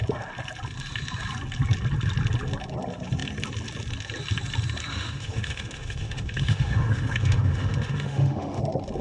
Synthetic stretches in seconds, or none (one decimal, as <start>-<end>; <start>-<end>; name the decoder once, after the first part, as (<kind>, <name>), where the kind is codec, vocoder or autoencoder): 4.9-8.6 (autoencoder, DAC-VAE)